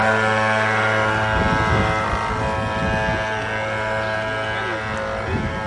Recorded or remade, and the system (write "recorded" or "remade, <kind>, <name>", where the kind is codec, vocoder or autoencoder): recorded